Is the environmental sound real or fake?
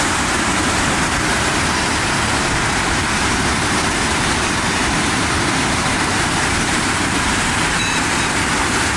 fake